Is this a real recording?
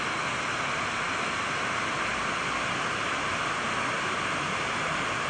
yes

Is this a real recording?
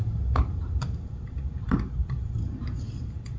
no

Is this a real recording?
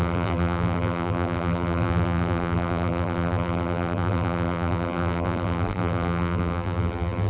no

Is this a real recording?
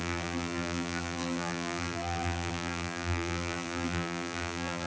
no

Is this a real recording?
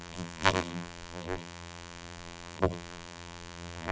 no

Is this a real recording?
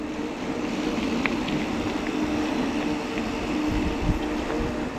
yes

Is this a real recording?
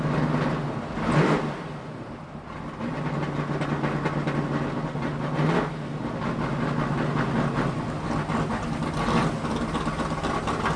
yes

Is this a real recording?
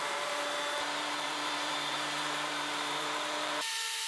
no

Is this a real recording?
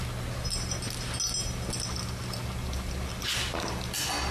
yes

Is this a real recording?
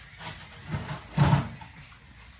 yes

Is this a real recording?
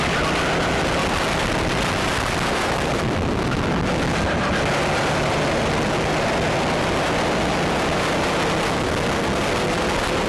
yes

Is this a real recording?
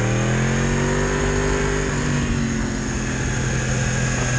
yes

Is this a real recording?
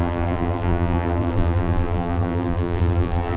no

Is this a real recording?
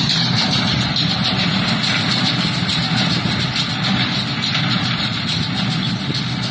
yes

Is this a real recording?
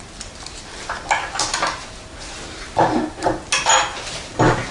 yes